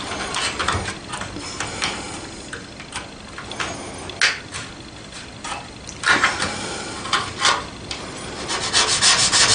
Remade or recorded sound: recorded